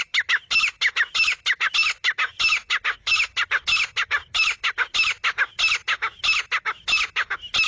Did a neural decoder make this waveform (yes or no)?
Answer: no